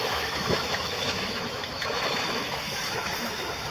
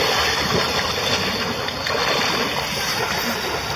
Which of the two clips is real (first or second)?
second